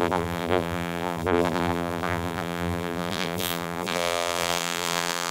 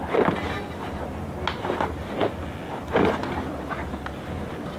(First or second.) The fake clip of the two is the first